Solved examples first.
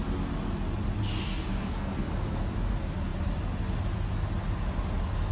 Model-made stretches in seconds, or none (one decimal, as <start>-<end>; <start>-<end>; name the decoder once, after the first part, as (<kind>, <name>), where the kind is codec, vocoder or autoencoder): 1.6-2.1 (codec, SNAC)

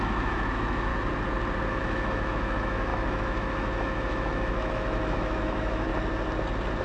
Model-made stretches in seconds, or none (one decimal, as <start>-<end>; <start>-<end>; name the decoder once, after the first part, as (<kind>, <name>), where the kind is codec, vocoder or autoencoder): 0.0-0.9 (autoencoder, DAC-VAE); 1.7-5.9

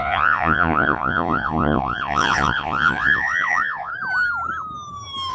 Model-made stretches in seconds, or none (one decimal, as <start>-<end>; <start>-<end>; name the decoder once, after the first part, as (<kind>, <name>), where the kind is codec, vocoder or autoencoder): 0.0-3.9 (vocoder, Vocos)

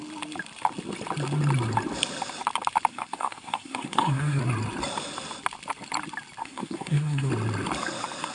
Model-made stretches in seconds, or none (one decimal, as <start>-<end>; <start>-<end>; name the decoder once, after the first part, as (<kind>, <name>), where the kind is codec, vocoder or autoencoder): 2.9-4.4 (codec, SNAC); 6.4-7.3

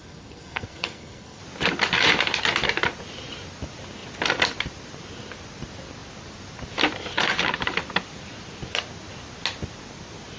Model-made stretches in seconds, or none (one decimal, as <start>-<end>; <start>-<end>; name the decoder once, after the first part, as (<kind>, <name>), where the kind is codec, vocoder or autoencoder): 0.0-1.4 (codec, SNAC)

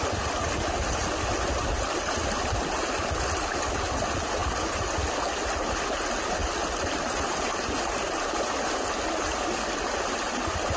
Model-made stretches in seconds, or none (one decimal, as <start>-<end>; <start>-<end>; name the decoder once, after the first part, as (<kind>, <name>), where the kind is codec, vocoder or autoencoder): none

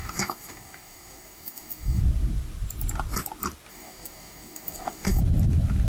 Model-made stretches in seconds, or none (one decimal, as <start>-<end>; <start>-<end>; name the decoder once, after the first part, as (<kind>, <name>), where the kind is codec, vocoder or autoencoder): 0.0-2.0 (codec, DAC); 3.7-5.2